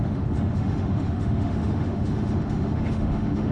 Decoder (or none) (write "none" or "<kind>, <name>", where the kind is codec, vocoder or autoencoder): autoencoder, DAC-VAE